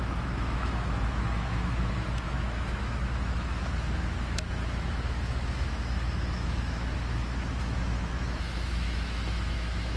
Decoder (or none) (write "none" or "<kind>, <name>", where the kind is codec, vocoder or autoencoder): autoencoder, DAC-VAE